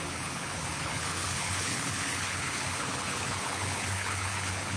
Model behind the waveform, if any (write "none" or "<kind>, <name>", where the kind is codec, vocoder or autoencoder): codec, HILCodec